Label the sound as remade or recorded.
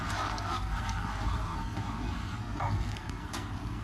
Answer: remade